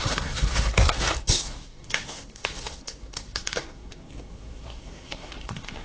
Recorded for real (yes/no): no